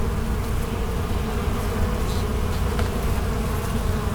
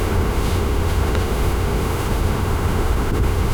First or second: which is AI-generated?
second